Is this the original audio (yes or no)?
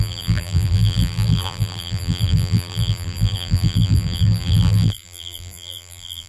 no